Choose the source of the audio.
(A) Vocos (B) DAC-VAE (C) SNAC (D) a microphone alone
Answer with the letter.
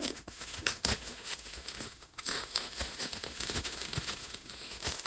B